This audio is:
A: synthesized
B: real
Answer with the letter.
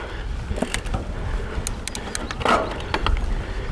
B